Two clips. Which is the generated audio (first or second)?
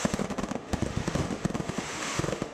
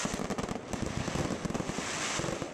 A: first